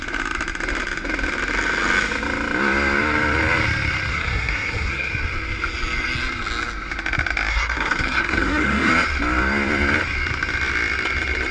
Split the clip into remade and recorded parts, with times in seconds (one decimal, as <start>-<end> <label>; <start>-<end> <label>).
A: 0.0-4.1 recorded; 4.1-5.1 remade; 5.1-7.5 recorded; 7.5-8.9 remade; 8.9-11.5 recorded